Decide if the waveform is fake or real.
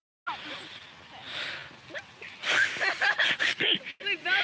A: real